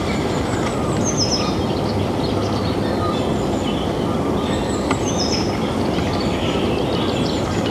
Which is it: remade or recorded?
recorded